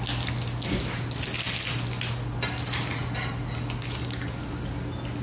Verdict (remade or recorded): recorded